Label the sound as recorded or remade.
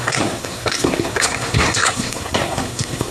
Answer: remade